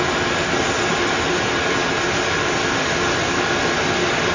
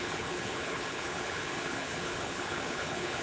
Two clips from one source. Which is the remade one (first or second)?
second